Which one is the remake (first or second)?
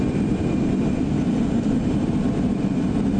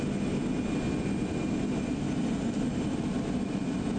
first